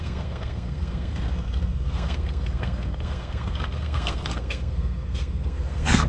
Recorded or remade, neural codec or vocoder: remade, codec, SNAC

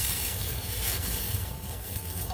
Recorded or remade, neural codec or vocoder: remade, codec, SNAC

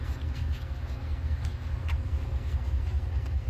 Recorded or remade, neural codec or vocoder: remade, codec, SNAC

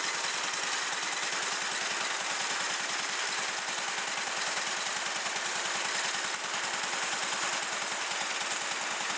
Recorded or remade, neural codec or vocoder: recorded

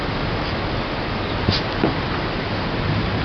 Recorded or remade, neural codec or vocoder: recorded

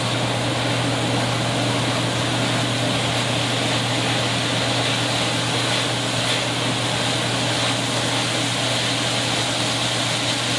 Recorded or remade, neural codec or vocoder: recorded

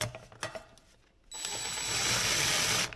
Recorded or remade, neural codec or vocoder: recorded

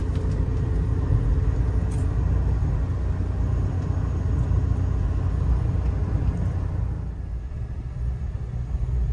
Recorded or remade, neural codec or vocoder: recorded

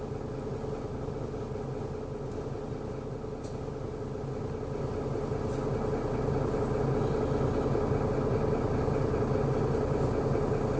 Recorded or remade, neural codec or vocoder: recorded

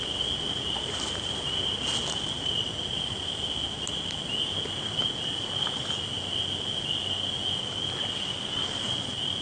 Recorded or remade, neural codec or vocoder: recorded